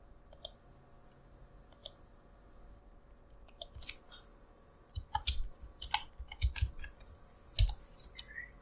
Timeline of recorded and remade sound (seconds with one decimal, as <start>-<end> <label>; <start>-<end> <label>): 0.0-8.6 recorded